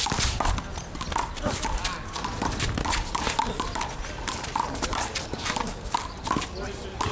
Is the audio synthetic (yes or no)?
no